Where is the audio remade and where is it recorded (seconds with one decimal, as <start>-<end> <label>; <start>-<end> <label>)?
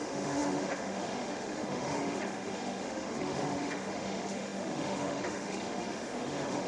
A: 0.0-6.7 remade